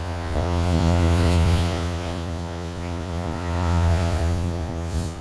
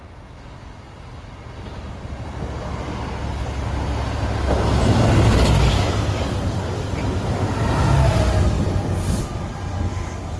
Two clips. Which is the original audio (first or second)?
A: second